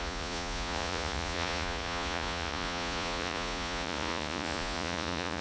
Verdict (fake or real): fake